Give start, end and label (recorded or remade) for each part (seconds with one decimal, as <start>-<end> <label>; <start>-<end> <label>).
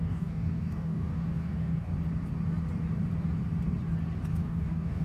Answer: 0.0-1.9 remade; 1.9-4.3 recorded; 4.3-5.0 remade